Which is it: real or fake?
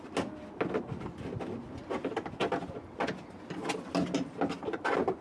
real